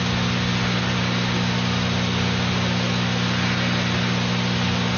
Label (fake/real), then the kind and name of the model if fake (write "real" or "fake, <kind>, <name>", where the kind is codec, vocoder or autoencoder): real